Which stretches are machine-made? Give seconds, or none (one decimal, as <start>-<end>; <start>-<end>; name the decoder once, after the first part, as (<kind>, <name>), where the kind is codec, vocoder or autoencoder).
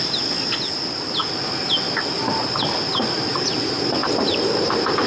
none